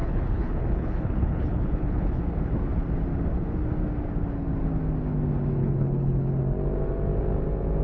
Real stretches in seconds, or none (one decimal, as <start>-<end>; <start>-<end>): 2.2-5.6; 6.4-7.8